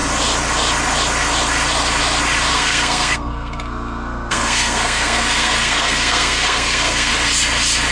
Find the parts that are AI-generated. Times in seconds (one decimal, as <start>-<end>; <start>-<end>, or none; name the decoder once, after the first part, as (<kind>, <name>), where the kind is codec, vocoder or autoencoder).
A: 2.5-7.1 (codec, SNAC)